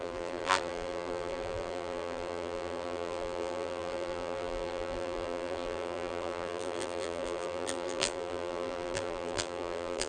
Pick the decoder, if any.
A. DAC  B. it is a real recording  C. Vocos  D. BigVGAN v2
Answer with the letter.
D